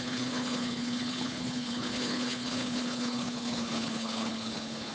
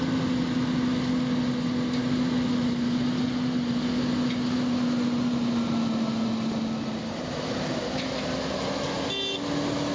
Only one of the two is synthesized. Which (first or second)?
first